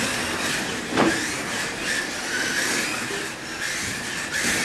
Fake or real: real